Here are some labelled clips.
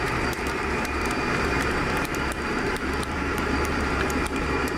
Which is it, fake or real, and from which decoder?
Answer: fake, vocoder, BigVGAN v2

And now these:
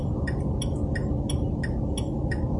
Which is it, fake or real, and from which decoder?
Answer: real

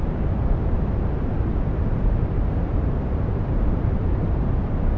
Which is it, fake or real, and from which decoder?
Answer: fake, vocoder, BigVGAN v2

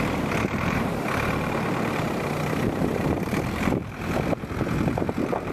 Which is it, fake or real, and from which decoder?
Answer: fake, vocoder, BigVGAN v2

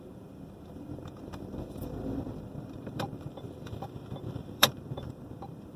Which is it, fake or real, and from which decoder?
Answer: fake, vocoder, BigVGAN v2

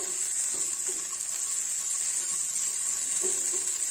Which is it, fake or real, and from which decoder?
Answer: real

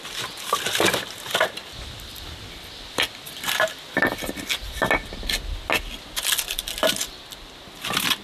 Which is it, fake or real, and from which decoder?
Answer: real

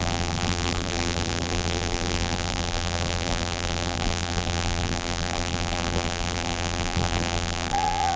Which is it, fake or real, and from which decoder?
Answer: fake, vocoder, BigVGAN v2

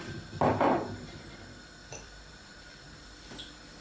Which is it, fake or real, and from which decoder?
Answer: fake, vocoder, BigVGAN v2